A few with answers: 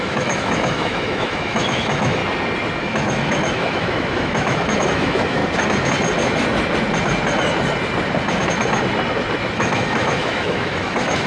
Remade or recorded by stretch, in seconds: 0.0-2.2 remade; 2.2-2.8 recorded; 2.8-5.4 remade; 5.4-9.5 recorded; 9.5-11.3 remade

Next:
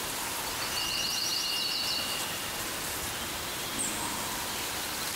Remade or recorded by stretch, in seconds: 0.0-5.2 recorded

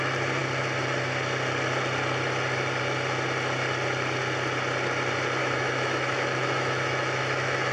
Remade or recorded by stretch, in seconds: 0.0-5.4 recorded; 5.4-7.7 remade

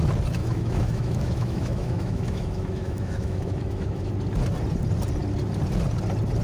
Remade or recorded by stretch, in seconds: 0.0-0.4 recorded; 0.4-4.1 remade; 4.1-6.4 recorded

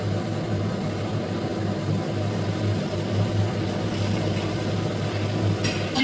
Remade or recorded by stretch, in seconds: 0.0-6.0 recorded

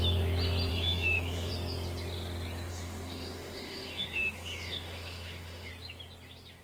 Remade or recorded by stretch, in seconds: 0.0-0.7 recorded; 0.7-1.5 remade; 1.5-2.7 recorded; 2.7-5.7 remade; 5.7-6.6 recorded

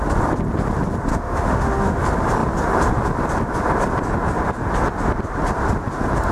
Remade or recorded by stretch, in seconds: 0.0-1.1 recorded; 1.1-2.0 remade; 2.0-6.3 recorded